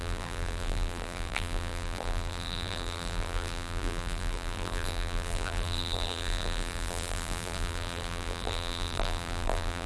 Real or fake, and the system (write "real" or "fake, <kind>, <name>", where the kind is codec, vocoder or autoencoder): fake, vocoder, BigVGAN v2